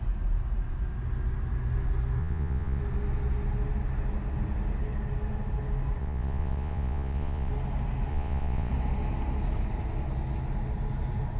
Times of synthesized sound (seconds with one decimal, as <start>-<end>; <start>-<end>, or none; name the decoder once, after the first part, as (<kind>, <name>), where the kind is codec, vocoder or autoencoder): 2.2-2.8 (vocoder, Vocos); 6.0-7.5; 8.1-8.7